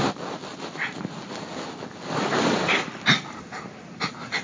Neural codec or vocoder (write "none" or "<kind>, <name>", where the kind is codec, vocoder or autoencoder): none